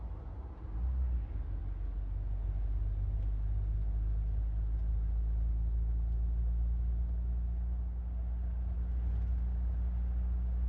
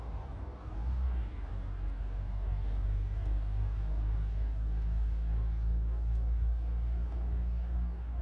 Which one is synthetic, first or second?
second